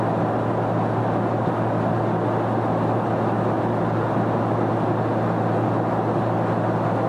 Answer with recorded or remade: recorded